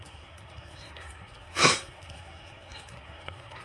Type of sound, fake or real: fake